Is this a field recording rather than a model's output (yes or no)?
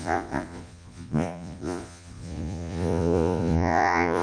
no